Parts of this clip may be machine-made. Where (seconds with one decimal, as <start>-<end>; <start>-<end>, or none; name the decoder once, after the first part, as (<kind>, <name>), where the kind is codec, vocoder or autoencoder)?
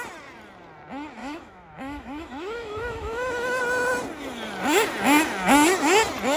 1.2-3.6 (autoencoder, DAC-VAE)